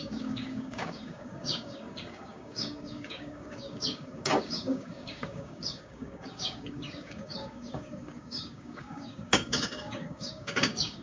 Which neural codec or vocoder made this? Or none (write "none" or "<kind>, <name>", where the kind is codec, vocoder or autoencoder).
codec, DAC